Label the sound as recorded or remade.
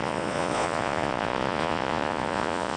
remade